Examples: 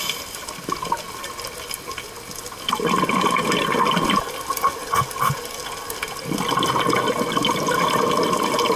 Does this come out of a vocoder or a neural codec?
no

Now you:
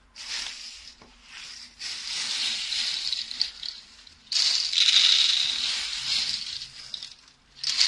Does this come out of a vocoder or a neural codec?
no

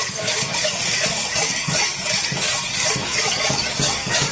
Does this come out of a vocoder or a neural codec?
yes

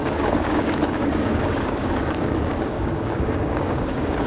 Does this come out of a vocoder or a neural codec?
yes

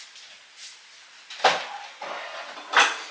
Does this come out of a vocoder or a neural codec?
no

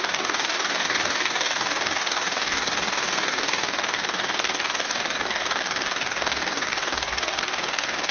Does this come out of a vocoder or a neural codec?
yes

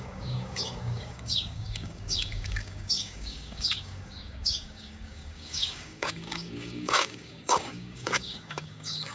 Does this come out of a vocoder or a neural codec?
yes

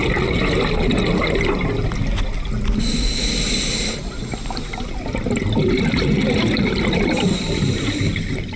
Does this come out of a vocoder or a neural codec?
no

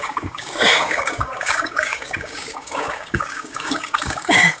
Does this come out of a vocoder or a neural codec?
yes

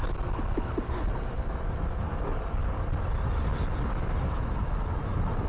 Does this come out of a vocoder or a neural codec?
no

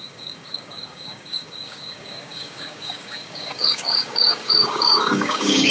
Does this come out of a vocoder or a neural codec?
yes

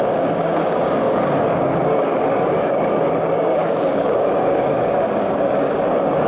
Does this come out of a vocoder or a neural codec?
yes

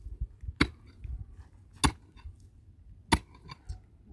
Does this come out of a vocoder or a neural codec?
no